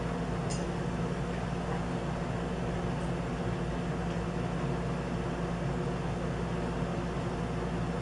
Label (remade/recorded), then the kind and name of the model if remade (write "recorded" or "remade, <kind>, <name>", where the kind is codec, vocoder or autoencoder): recorded